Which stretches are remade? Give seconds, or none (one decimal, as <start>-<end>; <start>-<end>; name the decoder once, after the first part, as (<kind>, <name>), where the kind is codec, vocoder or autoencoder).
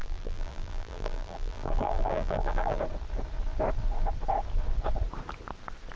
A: 0.0-2.8 (vocoder, BigVGAN v2)